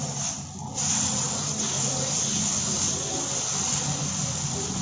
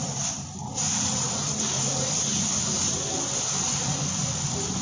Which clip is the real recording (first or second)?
first